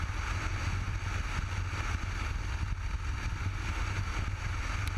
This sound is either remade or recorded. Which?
recorded